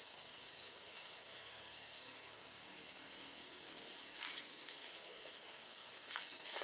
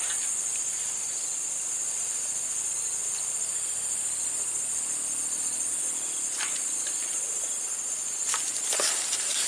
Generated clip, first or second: first